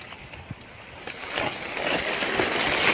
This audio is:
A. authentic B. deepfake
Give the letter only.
A